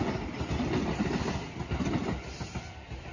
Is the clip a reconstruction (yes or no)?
no